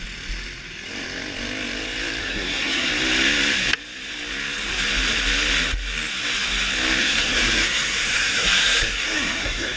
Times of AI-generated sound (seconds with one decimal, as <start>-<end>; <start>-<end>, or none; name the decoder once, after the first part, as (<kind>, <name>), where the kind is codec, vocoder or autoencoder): 2.2-2.9 (codec, SNAC); 7.0-9.8

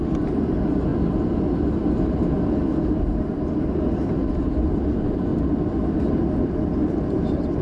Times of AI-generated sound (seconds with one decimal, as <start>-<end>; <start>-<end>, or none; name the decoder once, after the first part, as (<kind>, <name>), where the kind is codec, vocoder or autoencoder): none

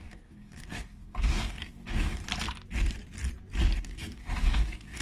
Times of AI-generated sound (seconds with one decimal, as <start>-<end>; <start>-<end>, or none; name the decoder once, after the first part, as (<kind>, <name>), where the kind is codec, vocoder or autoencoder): 0.0-2.2 (codec, DAC); 3.8-5.0

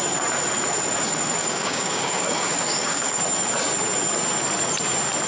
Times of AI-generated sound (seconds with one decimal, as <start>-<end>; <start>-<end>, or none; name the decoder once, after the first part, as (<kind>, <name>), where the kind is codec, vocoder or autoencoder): 1.4-3.2 (codec, DAC)